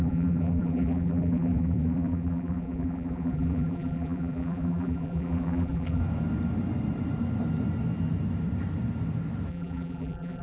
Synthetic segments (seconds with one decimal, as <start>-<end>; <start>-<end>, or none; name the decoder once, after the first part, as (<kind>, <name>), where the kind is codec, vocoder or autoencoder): 0.0-6.0 (vocoder, BigVGAN v2); 9.5-10.4